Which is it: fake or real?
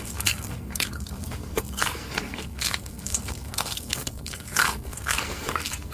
fake